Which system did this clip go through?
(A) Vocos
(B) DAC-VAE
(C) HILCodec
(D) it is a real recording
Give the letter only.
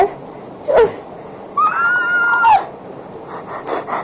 D